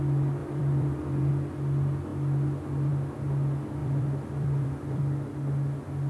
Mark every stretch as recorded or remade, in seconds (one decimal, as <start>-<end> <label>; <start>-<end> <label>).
0.0-0.4 recorded; 0.4-1.3 remade; 1.3-3.8 recorded; 3.8-5.0 remade; 5.0-6.1 recorded